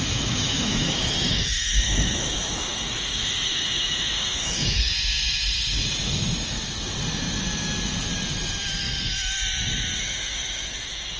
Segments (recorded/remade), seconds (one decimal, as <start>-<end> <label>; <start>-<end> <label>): 0.0-4.9 remade; 4.9-10.0 recorded; 10.0-11.2 remade